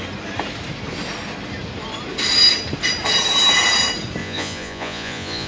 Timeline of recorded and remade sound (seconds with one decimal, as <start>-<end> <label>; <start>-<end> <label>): 0.0-4.2 recorded; 4.2-5.5 remade